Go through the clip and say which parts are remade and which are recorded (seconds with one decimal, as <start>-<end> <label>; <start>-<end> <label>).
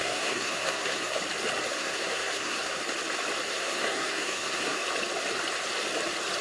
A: 0.0-1.2 remade; 1.2-1.7 recorded; 1.7-2.8 remade; 2.8-3.5 recorded; 3.5-4.8 remade; 4.8-6.4 recorded